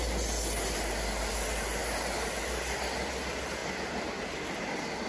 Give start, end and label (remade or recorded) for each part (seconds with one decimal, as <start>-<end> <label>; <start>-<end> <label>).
0.0-5.1 recorded